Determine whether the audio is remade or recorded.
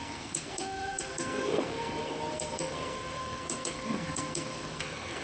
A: remade